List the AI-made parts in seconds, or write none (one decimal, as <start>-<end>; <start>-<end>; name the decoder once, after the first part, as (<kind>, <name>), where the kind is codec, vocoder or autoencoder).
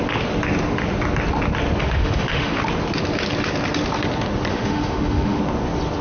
1.8-2.6 (autoencoder, DAC-VAE); 4.5-5.4